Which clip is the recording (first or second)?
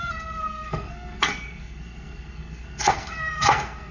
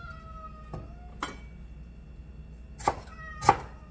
second